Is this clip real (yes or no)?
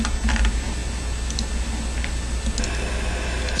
yes